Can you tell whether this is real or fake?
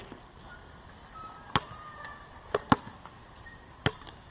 real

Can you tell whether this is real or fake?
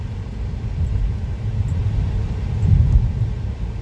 real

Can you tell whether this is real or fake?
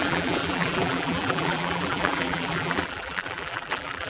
fake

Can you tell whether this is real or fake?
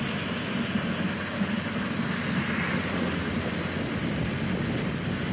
real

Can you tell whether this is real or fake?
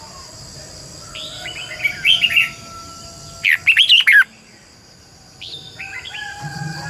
real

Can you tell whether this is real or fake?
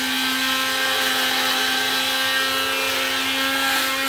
real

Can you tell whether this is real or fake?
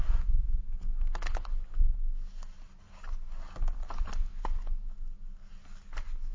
real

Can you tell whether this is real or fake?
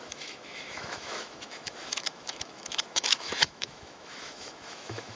fake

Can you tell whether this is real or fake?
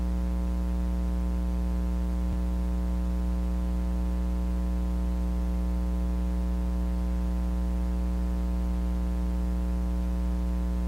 real